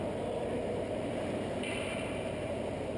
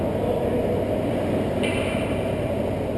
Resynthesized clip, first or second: first